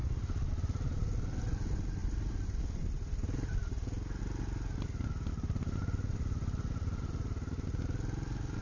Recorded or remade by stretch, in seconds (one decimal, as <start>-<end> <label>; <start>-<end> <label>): 0.0-8.6 recorded